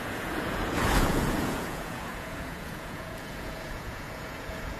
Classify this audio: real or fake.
fake